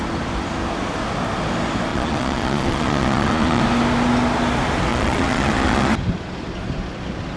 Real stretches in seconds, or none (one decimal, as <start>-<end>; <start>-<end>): 0.0-1.9; 3.6-4.9; 5.9-7.4